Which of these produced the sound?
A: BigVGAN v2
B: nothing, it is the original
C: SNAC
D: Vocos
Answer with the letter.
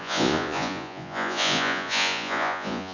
D